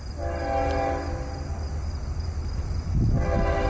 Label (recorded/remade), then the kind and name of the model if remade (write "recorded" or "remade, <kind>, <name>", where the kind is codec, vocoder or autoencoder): recorded